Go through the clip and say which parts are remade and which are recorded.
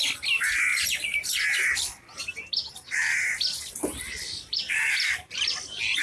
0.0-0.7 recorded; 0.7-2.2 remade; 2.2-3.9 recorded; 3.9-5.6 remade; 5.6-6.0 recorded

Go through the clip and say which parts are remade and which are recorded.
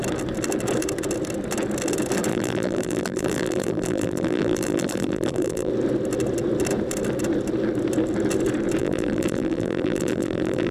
0.0-2.3 recorded; 2.3-5.7 remade; 5.7-8.8 recorded; 8.8-10.7 remade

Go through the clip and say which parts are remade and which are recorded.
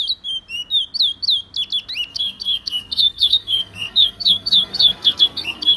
0.0-2.1 recorded; 2.1-5.8 remade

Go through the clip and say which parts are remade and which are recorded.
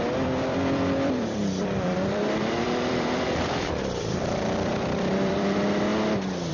0.0-5.9 remade; 5.9-6.5 recorded